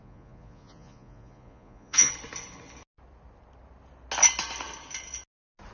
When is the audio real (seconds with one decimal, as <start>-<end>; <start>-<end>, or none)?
2.1-5.7